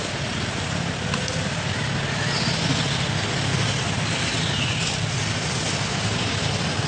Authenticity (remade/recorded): recorded